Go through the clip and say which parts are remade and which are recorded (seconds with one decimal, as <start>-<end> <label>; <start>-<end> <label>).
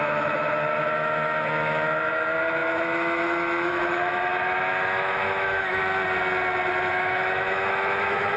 0.0-5.8 remade; 5.8-6.9 recorded; 6.9-8.4 remade